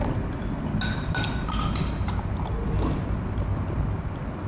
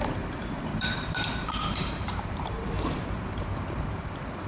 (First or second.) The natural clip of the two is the first